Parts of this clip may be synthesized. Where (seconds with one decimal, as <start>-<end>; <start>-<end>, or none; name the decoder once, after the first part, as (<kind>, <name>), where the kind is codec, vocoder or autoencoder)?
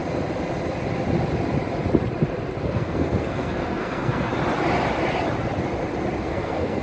2.6-4.3 (codec, SNAC); 6.2-6.8